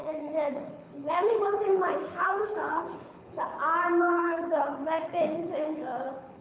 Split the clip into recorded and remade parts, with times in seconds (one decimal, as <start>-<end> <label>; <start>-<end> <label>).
0.0-3.5 remade; 3.5-4.0 recorded; 4.0-6.4 remade